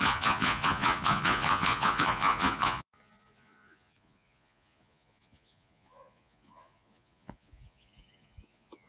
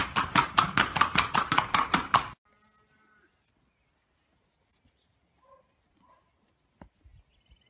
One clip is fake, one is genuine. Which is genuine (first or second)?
second